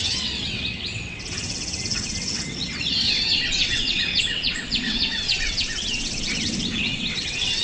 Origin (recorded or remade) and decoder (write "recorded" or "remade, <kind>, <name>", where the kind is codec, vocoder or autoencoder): remade, vocoder, WaveNeXt